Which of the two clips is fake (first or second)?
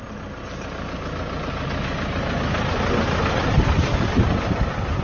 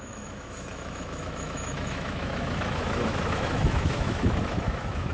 second